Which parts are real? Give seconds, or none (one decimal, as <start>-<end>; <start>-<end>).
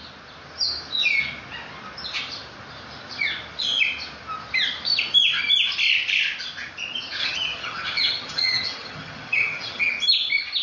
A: 0.0-7.2; 9.9-10.6